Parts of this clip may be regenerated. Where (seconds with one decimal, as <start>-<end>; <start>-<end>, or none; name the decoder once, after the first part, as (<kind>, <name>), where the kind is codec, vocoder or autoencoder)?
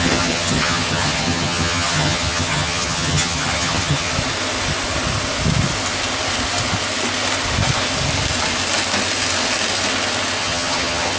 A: 0.0-4.1 (vocoder, HiFi-GAN); 10.4-11.2